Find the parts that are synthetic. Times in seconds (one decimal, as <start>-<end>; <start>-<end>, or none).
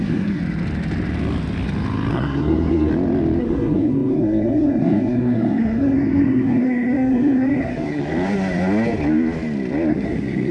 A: 0.0-0.4; 2.1-2.9; 3.4-8.0; 9.9-10.5